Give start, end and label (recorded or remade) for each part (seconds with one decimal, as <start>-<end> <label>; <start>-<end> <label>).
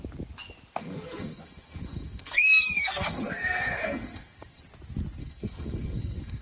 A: 0.0-0.8 recorded; 0.8-4.6 remade; 4.6-5.2 recorded; 5.2-6.4 remade